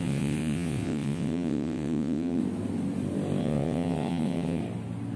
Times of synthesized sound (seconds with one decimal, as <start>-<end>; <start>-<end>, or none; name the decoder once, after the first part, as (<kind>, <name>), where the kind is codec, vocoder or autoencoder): 0.0-2.4 (vocoder, WaveNeXt); 3.4-4.6